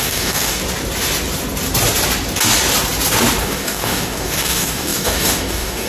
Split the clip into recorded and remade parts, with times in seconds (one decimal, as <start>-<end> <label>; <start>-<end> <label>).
0.0-0.6 remade; 0.6-3.4 recorded; 3.4-5.9 remade